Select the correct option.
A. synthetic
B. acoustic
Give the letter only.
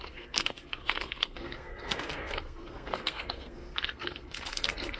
A